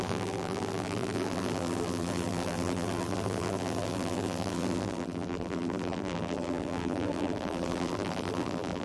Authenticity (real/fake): fake